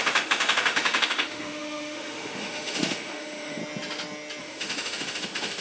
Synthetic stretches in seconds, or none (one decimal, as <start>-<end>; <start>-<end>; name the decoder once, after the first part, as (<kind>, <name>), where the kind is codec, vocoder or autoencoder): 0.0-3.6 (autoencoder, DAC-VAE); 4.4-5.6